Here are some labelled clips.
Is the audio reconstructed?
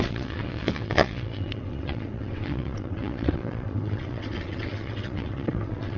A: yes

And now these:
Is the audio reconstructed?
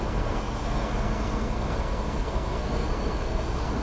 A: yes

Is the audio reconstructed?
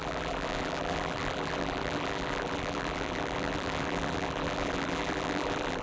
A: yes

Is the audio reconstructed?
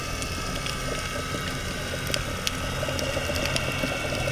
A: no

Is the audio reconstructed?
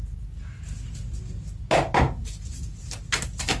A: no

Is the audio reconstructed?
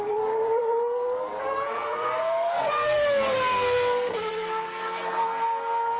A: yes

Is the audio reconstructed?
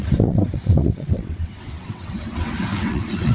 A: yes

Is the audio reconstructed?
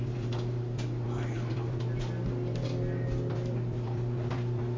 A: no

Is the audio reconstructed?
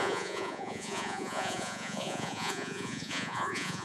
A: yes